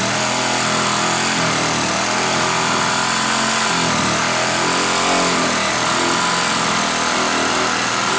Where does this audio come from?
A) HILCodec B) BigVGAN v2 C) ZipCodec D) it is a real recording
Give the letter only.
D